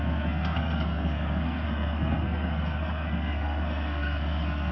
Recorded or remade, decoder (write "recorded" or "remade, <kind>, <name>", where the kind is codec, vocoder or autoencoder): remade, codec, SNAC